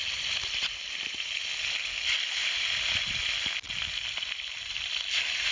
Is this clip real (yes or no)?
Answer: yes